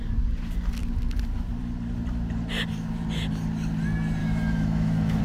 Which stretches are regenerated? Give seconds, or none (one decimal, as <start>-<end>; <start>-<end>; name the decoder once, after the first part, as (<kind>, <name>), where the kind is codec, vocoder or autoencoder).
4.2-5.2 (autoencoder, DAC-VAE)